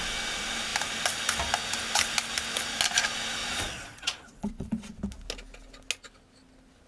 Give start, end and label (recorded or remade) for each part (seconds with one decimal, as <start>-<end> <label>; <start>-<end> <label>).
0.0-3.4 recorded; 3.4-4.9 remade; 4.9-6.9 recorded